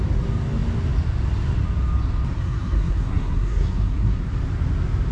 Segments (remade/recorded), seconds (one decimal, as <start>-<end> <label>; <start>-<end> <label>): 0.0-2.3 recorded; 2.3-4.3 remade; 4.3-5.1 recorded